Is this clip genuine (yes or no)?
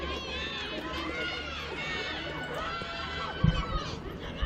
yes